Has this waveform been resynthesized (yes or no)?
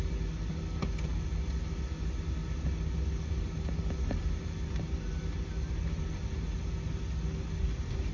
no